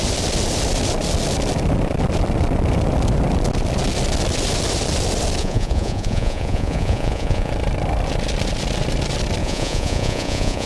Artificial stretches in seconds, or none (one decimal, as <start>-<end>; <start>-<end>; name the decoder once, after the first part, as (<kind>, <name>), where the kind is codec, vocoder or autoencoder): 5.4-7.5 (vocoder, Vocos); 9.4-10.7

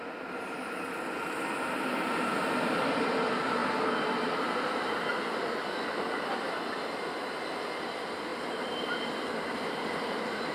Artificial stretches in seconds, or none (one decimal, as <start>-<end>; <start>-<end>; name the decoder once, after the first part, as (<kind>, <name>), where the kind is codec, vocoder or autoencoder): 8.3-10.5 (vocoder, BigVGAN v2)